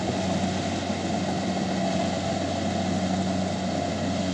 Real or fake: real